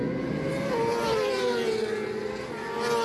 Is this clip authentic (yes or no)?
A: yes